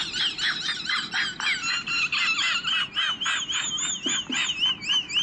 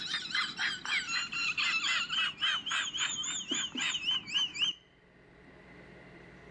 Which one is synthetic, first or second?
second